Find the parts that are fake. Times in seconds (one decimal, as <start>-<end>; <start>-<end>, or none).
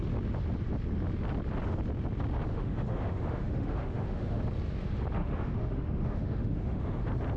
2.5-4.4; 5.2-7.0